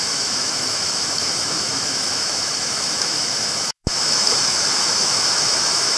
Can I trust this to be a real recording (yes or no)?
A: no